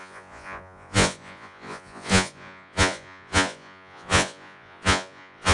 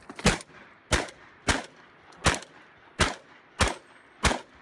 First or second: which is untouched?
second